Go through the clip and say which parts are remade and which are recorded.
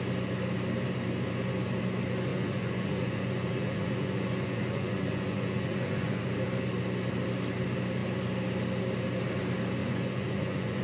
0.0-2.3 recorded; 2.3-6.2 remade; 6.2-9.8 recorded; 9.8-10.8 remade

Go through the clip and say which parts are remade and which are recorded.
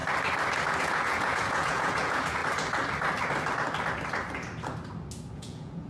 0.0-0.8 recorded; 0.8-2.4 remade; 2.4-5.3 recorded; 5.3-5.9 remade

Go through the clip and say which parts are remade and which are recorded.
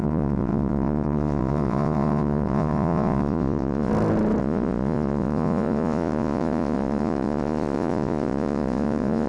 0.0-3.9 remade; 3.9-4.4 recorded; 4.4-9.3 remade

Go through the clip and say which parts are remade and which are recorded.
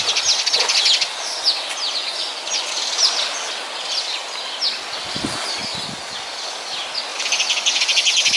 0.0-2.0 recorded; 2.0-2.7 remade; 2.7-8.4 recorded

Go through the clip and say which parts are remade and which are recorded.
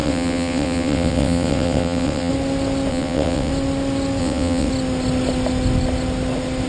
0.0-2.3 remade; 2.3-2.9 recorded; 2.9-3.5 remade; 3.5-4.2 recorded; 4.2-4.7 remade; 4.7-6.7 recorded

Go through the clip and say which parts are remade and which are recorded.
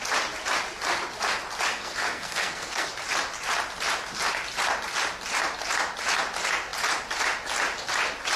0.0-1.7 recorded; 1.7-2.9 remade; 2.9-8.4 recorded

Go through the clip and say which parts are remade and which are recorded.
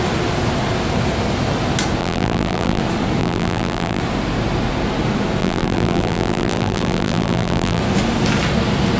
0.0-2.0 recorded; 2.0-2.8 remade; 2.8-3.2 recorded; 3.2-4.0 remade; 4.0-5.4 recorded; 5.4-7.8 remade; 7.8-9.0 recorded